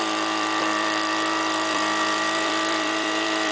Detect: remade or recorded remade